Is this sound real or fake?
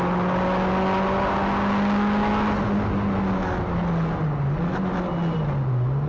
real